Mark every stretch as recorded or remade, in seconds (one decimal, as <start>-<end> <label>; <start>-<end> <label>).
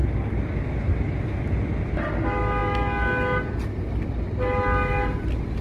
0.0-5.6 recorded